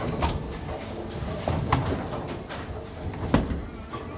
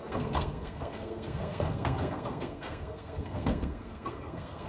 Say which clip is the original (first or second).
first